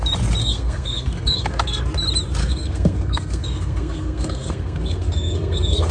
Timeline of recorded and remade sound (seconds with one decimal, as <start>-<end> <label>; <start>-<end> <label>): 0.0-0.4 recorded; 0.4-1.8 remade; 1.8-2.4 recorded; 2.4-5.9 remade